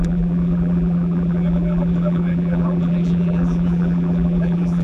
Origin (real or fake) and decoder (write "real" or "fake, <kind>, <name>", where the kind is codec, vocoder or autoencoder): fake, vocoder, BigVGAN v2